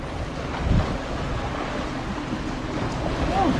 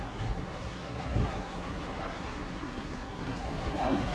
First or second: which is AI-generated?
second